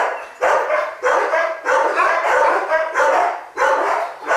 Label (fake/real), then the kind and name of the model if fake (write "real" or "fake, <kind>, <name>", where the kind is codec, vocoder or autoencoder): fake, vocoder, BigVGAN v2